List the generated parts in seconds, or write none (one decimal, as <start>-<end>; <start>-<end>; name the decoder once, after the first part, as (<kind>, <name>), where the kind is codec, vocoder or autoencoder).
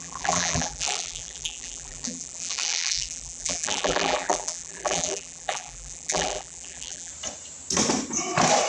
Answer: 0.0-7.1 (vocoder, BigVGAN v2)